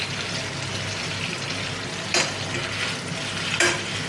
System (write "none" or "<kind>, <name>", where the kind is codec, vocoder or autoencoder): none